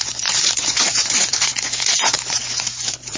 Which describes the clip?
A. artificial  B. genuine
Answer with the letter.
A